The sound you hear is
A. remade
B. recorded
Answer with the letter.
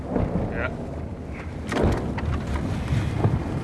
B